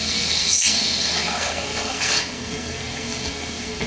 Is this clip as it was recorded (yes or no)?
no